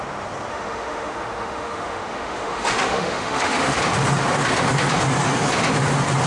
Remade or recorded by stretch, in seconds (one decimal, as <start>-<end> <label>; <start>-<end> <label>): 0.0-0.5 recorded; 0.5-3.8 remade; 3.8-6.3 recorded